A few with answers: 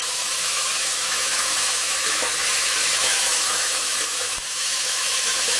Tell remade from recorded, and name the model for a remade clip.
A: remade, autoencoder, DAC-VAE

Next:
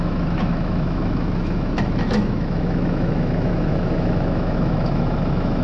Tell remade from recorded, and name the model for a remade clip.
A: remade, autoencoder, DAC-VAE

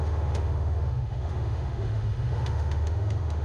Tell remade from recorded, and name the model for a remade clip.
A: remade, autoencoder, DAC-VAE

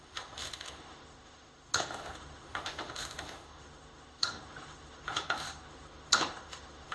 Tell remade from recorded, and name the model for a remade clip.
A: remade, autoencoder, DAC-VAE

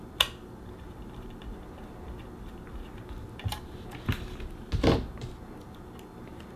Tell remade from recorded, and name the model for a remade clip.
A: recorded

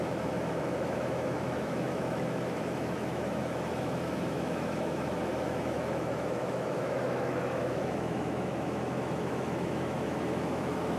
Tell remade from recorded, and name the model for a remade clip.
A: remade, autoencoder, DAC-VAE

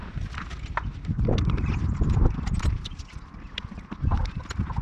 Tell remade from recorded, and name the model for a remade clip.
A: recorded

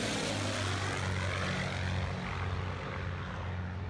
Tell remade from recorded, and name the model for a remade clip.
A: recorded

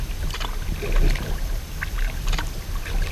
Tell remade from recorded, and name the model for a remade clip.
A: recorded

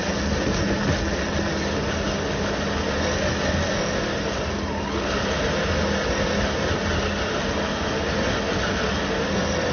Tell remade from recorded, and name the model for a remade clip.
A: recorded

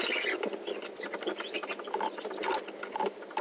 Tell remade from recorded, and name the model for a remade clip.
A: recorded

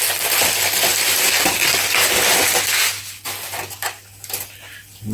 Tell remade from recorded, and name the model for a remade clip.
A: recorded